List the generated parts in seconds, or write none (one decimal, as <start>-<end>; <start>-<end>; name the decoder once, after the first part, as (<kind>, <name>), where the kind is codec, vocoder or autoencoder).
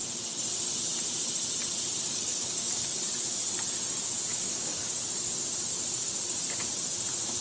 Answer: 2.1-3.0 (codec, DAC); 4.3-4.9